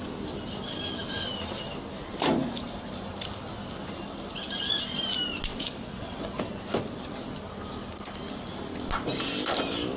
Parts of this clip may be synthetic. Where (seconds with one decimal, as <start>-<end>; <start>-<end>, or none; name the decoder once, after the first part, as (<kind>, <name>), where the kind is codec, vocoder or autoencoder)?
5.5-6.4 (vocoder, WaveNeXt)